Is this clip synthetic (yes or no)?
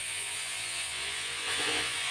yes